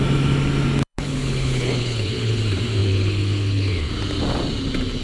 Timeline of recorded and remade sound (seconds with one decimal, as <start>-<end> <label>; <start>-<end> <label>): 0.0-0.8 recorded; 0.8-2.4 remade; 2.4-2.8 recorded; 2.8-3.9 remade; 3.9-5.0 recorded